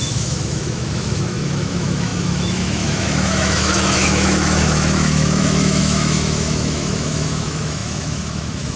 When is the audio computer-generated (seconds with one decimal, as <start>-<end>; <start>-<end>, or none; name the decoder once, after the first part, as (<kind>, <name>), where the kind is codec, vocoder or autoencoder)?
0.0-8.8 (autoencoder, DAC-VAE)